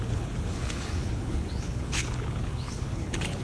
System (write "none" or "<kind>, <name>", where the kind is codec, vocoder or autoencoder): codec, HILCodec